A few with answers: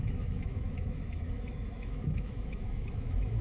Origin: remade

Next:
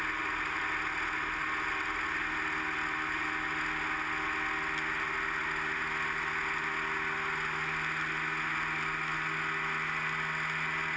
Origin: recorded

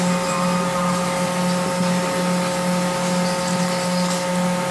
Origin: recorded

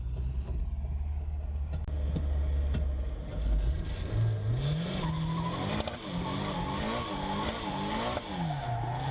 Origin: recorded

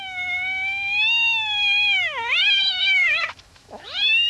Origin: remade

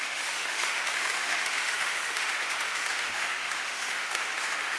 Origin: remade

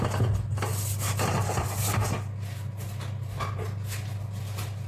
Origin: recorded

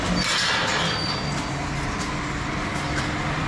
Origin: recorded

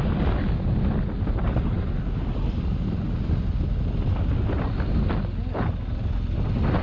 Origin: recorded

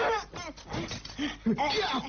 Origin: recorded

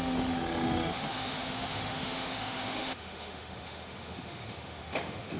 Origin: remade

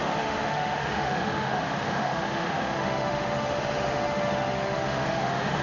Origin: remade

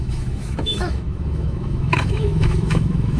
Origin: remade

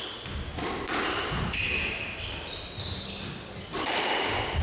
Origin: recorded